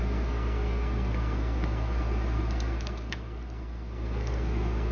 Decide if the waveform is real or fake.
fake